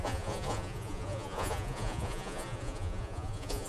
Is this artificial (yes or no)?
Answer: yes